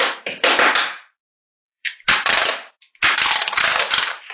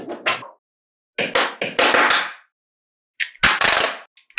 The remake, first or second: first